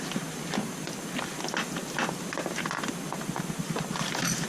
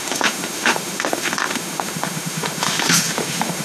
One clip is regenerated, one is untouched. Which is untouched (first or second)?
first